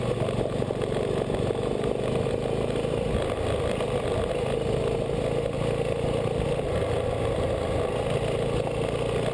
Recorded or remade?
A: recorded